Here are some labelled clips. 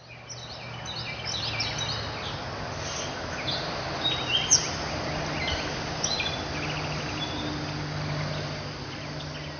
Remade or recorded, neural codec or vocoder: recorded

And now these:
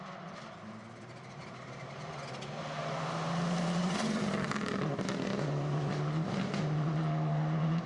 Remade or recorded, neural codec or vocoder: recorded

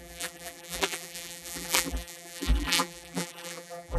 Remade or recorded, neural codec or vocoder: remade, vocoder, BigVGAN v2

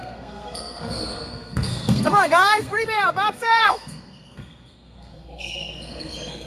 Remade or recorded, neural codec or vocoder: remade, codec, SNAC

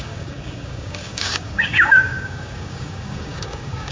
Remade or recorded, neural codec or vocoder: remade, codec, DAC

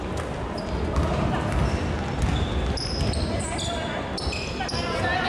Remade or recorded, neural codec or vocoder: recorded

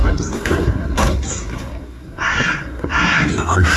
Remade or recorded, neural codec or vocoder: remade, codec, SNAC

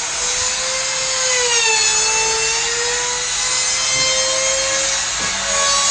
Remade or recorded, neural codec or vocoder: recorded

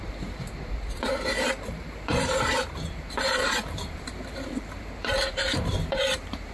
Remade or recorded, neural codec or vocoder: remade, vocoder, BigVGAN v2